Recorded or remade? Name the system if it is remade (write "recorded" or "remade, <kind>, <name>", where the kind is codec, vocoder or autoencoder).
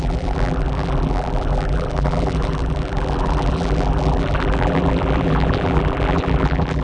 remade, vocoder, BigVGAN v2